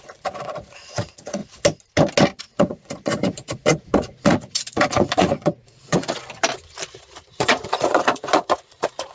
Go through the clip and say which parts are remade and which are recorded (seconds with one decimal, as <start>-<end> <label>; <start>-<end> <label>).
0.0-1.4 remade; 1.4-2.4 recorded; 2.4-6.2 remade; 6.2-6.9 recorded; 6.9-9.1 remade